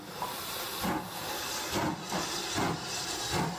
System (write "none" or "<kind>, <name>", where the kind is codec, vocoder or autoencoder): none